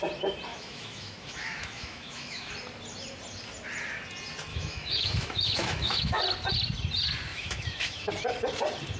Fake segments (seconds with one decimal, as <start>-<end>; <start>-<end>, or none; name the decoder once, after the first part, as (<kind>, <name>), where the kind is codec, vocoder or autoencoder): 0.5-2.5 (autoencoder, DAC-VAE); 4.5-6.2; 7.3-8.1